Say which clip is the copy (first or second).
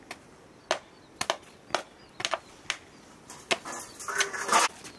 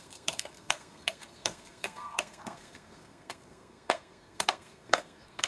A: second